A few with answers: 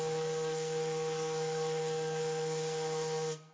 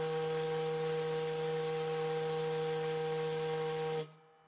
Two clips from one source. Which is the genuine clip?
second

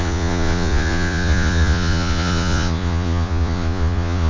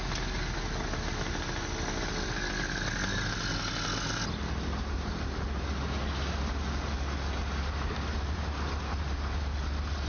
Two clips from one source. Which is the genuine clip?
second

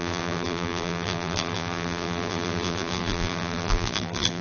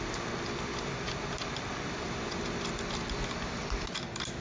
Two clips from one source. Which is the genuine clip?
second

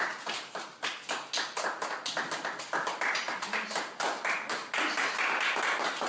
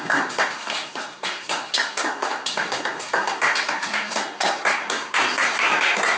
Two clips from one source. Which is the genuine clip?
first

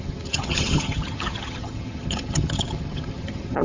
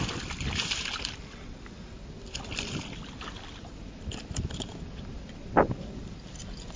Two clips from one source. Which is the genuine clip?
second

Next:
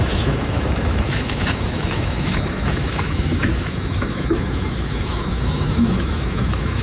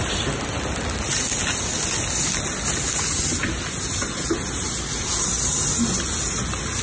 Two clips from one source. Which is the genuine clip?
second